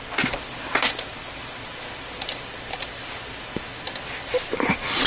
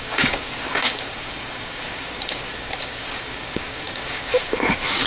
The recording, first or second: first